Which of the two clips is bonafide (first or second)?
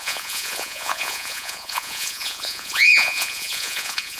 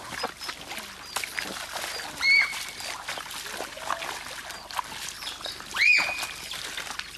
second